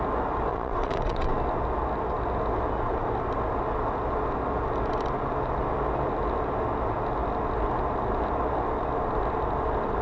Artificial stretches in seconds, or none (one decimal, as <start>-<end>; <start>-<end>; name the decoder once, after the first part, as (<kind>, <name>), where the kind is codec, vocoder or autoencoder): 0.5-1.3 (vocoder, WaveNeXt)